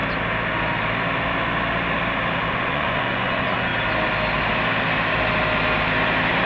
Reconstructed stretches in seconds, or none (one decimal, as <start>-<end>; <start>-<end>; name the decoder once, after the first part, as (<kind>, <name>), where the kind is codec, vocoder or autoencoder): 2.5-3.7 (vocoder, Vocos)